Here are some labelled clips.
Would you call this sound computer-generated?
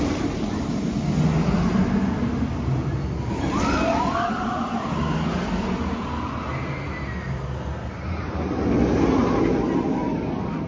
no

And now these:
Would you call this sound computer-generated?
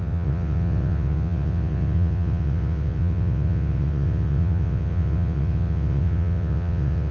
yes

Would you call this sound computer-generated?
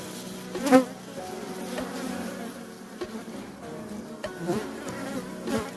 no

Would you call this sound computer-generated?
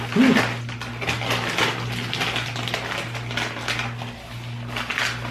no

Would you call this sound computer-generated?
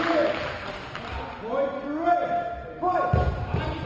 no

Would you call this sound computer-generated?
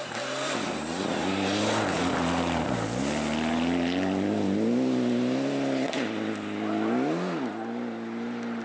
no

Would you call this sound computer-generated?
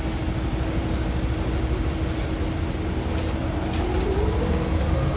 no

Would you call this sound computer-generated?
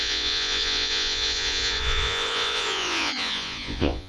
yes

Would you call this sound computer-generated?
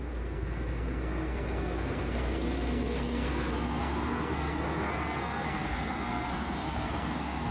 yes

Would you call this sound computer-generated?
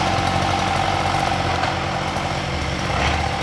no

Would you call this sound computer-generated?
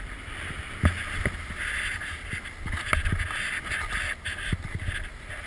no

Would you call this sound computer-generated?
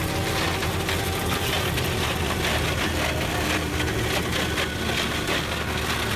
no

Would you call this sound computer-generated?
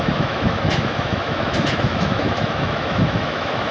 yes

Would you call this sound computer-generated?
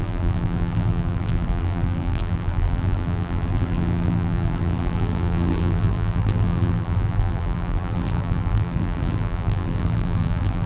yes